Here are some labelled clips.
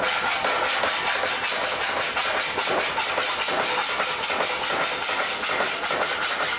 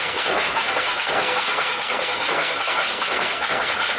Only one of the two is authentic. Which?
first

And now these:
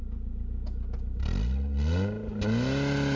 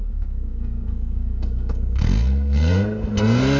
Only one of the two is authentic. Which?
first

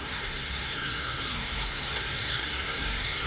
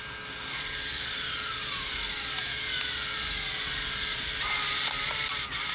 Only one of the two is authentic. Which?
second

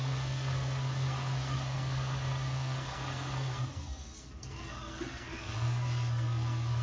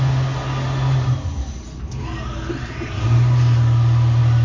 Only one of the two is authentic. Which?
second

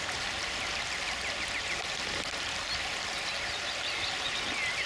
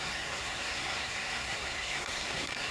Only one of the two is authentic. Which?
first